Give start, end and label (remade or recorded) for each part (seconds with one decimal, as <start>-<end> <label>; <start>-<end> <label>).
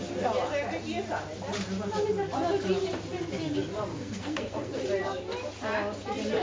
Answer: 0.0-3.9 recorded; 3.9-4.8 remade; 4.8-6.4 recorded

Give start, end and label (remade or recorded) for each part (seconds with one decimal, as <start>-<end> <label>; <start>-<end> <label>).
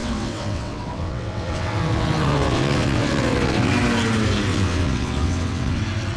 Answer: 0.0-3.7 remade; 3.7-4.5 recorded; 4.5-5.8 remade; 5.8-6.2 recorded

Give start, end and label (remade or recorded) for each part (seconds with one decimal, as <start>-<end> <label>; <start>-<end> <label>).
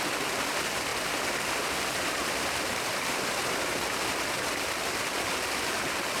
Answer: 0.0-6.2 recorded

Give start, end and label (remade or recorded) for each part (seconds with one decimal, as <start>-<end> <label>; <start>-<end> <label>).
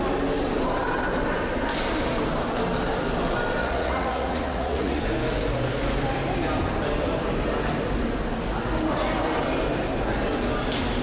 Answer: 0.0-3.6 recorded; 3.6-5.0 remade; 5.0-11.0 recorded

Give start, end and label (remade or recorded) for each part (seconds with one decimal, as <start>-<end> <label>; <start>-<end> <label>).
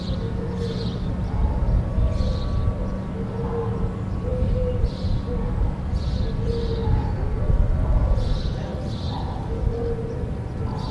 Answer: 0.0-4.3 recorded; 4.3-4.9 remade; 4.9-8.7 recorded; 8.7-9.4 remade; 9.4-10.9 recorded